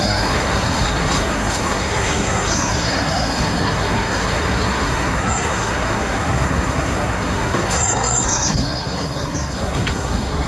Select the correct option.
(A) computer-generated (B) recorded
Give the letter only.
A